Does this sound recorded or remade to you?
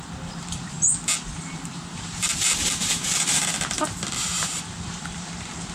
remade